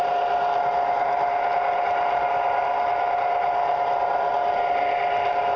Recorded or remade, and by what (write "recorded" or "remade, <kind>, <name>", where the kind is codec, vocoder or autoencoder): recorded